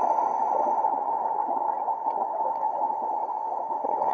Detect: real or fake fake